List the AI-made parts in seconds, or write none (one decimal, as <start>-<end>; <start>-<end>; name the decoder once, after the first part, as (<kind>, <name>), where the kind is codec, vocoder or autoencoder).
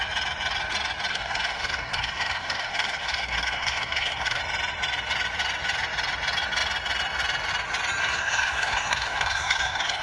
1.1-4.4 (codec, SNAC); 8.0-10.0